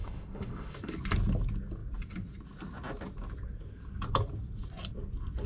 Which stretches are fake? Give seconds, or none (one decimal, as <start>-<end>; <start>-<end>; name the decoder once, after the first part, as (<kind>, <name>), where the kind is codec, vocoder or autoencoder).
0.0-0.9 (autoencoder, DAC-VAE)